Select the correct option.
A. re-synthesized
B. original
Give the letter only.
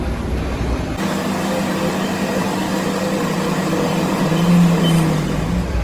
B